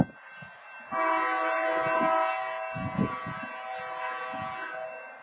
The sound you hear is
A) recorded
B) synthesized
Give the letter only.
A